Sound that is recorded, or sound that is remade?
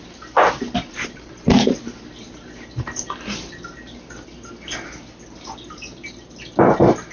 recorded